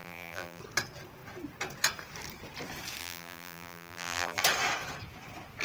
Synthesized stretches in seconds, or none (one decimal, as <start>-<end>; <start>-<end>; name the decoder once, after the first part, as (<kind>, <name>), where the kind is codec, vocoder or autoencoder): 0.0-0.6 (vocoder, BigVGAN v2); 3.0-4.4